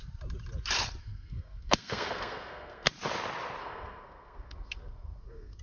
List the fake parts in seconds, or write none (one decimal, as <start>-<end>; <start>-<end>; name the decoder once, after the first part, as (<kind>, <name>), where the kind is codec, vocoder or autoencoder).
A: 1.0-2.9 (codec, SNAC); 3.6-5.6